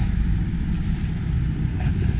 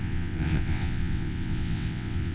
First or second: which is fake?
second